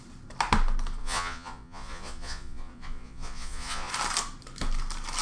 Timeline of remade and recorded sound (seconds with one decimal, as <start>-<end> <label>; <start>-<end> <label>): 0.0-1.0 recorded; 1.0-3.9 remade; 3.9-5.2 recorded